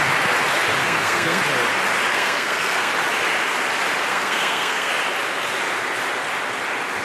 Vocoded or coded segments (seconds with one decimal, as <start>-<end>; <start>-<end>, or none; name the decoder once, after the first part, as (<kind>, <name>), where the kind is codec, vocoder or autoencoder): 0.8-1.4 (codec, SNAC); 2.1-2.9; 4.1-4.9